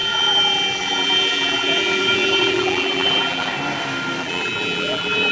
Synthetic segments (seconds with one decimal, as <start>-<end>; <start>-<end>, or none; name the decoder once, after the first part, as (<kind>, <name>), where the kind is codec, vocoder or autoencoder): 0.0-3.5 (vocoder, BigVGAN v2); 4.2-5.3